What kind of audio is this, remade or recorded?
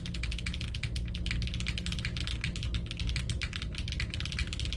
recorded